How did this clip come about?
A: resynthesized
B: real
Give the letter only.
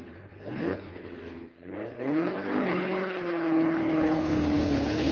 A